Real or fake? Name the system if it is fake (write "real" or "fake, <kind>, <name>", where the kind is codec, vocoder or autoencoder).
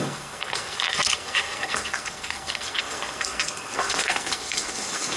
fake, codec, SNAC